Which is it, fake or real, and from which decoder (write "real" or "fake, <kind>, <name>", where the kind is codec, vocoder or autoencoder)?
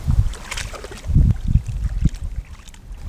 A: real